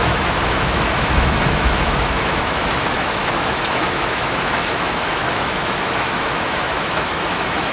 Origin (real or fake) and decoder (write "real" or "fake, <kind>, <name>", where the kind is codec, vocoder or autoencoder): fake, autoencoder, DAC-VAE